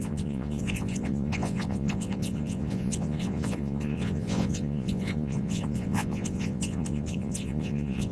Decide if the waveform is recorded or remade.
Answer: remade